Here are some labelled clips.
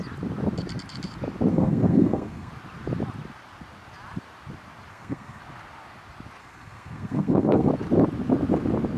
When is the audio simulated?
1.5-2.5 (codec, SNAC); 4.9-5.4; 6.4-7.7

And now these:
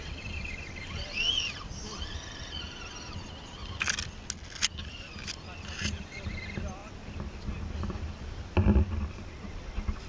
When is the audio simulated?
none